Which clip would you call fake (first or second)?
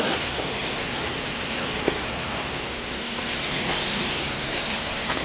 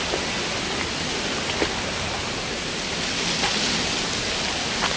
first